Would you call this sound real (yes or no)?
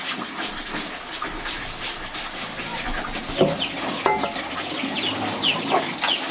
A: yes